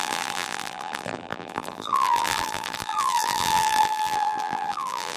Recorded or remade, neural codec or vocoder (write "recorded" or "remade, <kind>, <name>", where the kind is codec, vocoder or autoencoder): remade, vocoder, BigVGAN v2